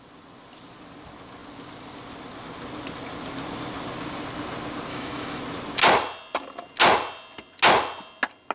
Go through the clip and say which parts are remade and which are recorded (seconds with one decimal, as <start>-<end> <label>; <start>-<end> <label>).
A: 0.0-4.9 recorded; 4.9-5.4 remade; 5.4-8.5 recorded